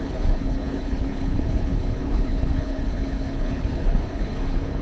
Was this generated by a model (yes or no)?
yes